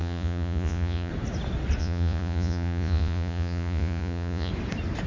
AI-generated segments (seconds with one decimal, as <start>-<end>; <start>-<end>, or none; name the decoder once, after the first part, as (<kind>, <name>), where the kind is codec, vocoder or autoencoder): 0.0-1.1 (vocoder, Vocos); 1.8-4.5